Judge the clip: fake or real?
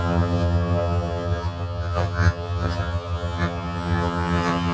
fake